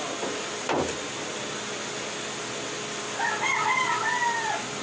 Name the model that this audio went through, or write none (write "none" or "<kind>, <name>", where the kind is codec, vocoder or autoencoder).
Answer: none